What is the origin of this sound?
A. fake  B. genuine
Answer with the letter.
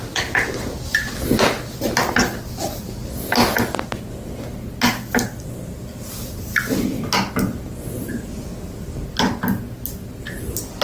B